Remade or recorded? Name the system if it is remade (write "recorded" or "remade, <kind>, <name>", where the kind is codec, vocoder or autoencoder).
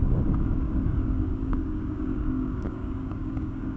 remade, codec, DAC